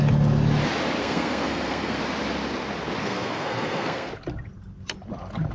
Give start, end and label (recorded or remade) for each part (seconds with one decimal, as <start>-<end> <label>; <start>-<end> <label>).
0.0-1.0 recorded; 1.0-2.0 remade; 2.0-3.0 recorded; 3.0-4.1 remade; 4.1-5.5 recorded